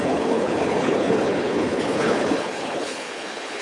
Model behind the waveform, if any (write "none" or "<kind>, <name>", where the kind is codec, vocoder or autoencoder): codec, HILCodec